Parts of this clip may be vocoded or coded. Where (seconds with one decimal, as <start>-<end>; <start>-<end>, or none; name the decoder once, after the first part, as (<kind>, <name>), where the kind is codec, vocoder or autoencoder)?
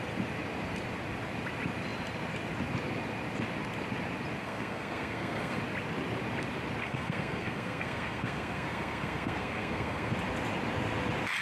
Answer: 4.4-5.6 (codec, SNAC); 6.8-10.1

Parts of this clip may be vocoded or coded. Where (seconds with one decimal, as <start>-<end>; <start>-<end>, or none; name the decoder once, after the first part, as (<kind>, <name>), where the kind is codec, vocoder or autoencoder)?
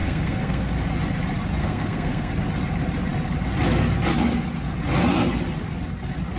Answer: 0.0-0.7 (codec, SNAC); 1.6-2.3